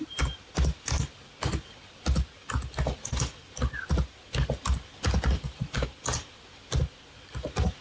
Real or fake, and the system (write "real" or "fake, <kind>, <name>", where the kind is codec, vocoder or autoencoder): real